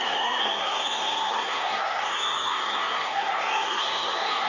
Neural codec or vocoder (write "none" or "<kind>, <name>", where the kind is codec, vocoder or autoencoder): codec, SNAC